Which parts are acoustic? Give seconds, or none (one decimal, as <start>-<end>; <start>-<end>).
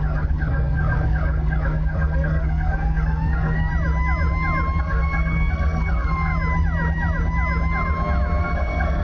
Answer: 3.7-4.8; 6.3-8.4